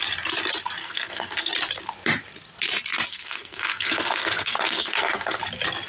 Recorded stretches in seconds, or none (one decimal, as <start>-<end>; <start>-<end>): 0.0-0.8; 1.5-3.1; 5.4-5.9